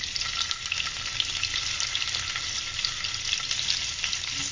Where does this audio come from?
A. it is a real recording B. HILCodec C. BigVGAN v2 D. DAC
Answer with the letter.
A